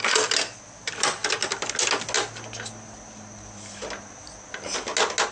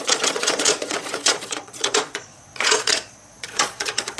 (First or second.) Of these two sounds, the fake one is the second